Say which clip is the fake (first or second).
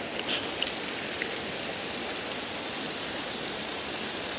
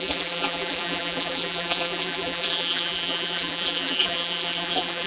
second